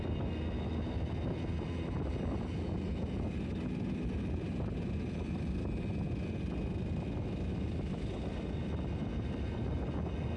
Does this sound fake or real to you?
real